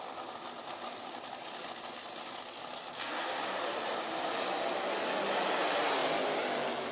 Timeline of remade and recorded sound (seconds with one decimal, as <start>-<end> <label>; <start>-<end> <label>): 0.0-6.9 recorded